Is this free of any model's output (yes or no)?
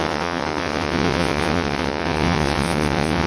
no